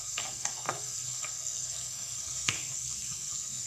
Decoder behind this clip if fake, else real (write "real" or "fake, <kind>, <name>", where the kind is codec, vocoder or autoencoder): fake, codec, SNAC